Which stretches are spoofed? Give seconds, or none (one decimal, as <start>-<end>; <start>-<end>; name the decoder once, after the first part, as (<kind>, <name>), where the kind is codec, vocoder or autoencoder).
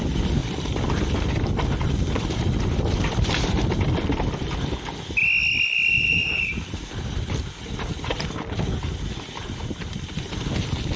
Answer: none